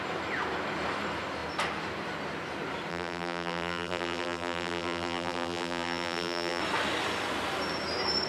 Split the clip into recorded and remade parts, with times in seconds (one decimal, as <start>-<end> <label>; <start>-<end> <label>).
0.0-2.9 recorded; 2.9-6.6 remade; 6.6-8.3 recorded